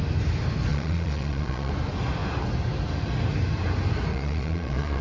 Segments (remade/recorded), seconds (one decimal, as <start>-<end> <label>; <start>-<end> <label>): 0.0-0.7 recorded; 0.7-1.7 remade; 1.7-4.1 recorded; 4.1-5.0 remade